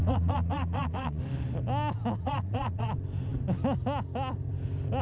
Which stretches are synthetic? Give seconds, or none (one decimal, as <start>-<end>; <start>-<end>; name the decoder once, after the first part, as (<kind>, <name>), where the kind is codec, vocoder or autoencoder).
0.0-1.2 (vocoder, Vocos); 2.2-2.9